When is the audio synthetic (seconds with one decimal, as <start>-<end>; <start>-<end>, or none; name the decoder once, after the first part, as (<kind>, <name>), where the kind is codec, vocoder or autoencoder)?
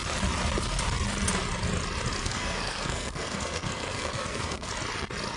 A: 2.2-4.7 (codec, SNAC)